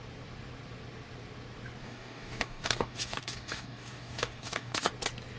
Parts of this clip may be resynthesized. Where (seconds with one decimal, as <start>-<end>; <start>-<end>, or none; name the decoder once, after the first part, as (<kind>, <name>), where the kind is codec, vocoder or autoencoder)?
1.8-4.9 (codec, DAC)